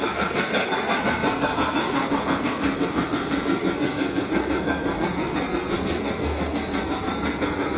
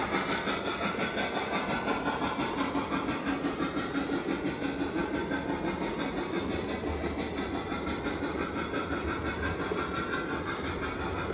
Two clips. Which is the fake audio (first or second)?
first